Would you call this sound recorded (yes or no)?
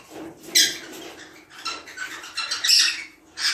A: yes